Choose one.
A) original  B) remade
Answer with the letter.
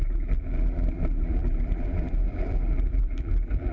B